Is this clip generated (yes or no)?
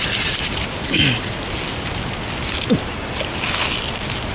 no